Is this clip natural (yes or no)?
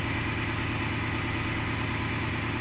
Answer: yes